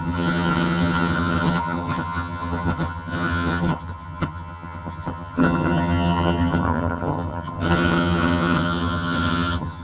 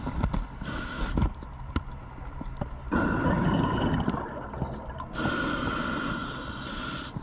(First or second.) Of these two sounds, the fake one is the first